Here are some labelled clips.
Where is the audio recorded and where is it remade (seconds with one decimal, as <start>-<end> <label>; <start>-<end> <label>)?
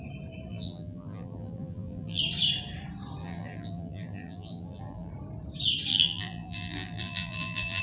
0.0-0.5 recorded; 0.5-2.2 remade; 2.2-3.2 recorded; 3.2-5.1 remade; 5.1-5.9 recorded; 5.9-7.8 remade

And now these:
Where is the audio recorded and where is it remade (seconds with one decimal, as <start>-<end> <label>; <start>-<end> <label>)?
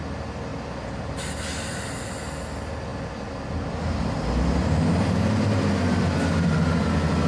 0.0-7.3 recorded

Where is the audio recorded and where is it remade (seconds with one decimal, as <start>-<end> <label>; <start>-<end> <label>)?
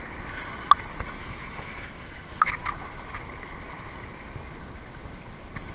0.0-1.2 recorded; 1.2-2.5 remade; 2.5-5.7 recorded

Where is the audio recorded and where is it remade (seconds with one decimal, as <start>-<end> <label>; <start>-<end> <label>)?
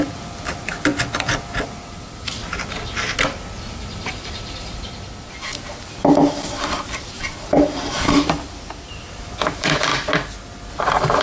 0.0-0.9 remade; 0.9-1.6 recorded; 1.6-2.4 remade; 2.4-3.7 recorded; 3.7-9.9 remade; 9.9-10.7 recorded; 10.7-11.2 remade